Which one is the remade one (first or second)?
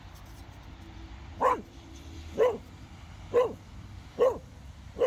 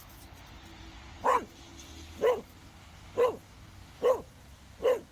first